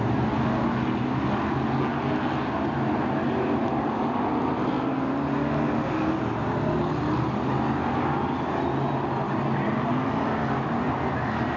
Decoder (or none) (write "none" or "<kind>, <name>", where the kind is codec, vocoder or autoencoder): none